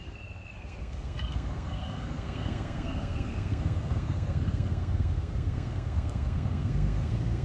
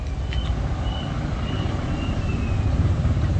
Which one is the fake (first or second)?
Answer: first